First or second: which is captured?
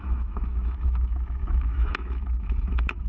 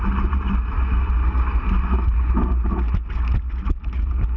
second